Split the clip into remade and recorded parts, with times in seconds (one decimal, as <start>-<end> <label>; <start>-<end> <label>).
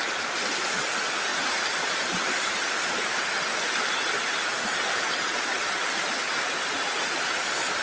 0.0-1.3 recorded; 1.3-2.7 remade; 2.7-7.8 recorded